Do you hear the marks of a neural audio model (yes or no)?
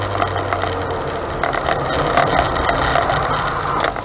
no